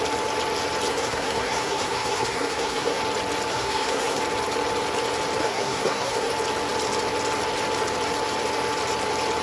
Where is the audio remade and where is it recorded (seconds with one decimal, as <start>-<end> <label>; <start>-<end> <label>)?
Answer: 0.0-0.9 recorded; 0.9-3.0 remade; 3.0-3.5 recorded; 3.5-4.2 remade; 4.2-5.4 recorded; 5.4-6.3 remade; 6.3-9.4 recorded